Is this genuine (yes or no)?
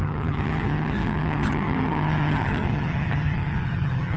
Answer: no